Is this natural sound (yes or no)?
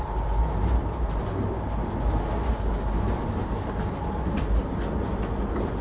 yes